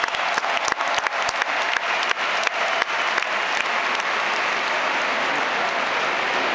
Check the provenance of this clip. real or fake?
real